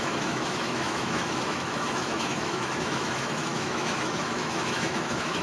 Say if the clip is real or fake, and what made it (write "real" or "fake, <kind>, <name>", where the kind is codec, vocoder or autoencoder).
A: fake, autoencoder, DAC-VAE